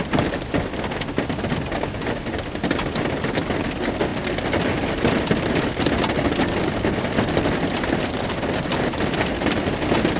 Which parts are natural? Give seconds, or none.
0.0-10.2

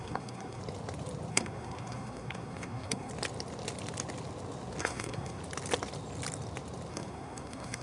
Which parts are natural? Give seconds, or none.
0.6-1.3; 3.1-4.8; 5.4-6.9